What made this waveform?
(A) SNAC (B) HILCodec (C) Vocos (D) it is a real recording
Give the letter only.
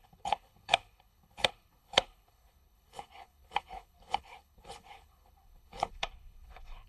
B